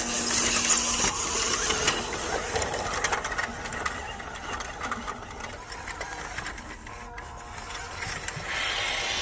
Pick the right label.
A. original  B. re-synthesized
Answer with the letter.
A